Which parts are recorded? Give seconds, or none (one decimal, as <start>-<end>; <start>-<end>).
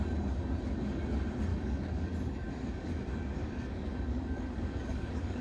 0.0-1.5; 2.9-3.4